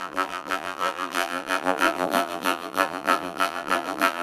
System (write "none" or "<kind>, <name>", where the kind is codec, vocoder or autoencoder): vocoder, BigVGAN v2